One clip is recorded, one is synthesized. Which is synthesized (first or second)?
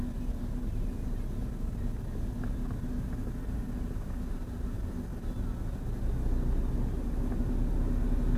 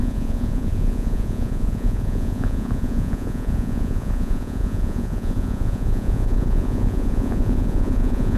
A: second